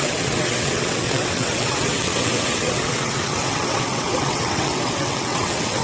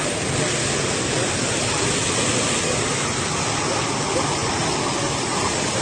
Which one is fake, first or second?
first